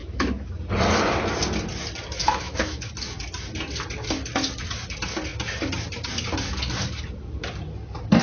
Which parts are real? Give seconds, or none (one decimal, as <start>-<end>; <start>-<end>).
0.5-2.2; 2.9-8.2